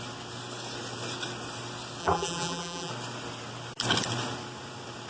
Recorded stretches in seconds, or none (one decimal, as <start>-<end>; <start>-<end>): 0.0-2.0; 2.9-5.1